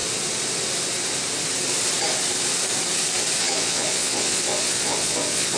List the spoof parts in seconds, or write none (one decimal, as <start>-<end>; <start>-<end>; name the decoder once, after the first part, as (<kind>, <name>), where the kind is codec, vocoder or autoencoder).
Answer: 3.4-5.6 (vocoder, Vocos)